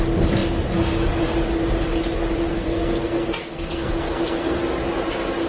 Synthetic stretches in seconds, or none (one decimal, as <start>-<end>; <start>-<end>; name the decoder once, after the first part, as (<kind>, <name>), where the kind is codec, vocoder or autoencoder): 2.5-4.6 (codec, SNAC)